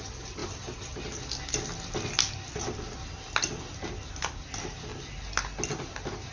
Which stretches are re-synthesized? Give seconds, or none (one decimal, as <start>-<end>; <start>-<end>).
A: none